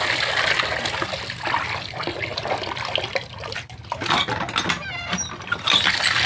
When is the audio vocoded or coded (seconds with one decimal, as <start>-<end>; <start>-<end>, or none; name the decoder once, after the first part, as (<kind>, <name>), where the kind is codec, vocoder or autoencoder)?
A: none